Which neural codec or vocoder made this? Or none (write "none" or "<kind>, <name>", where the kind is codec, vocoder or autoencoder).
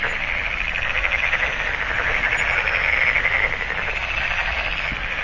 none